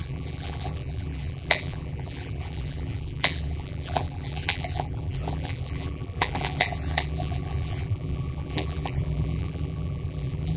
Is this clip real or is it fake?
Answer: fake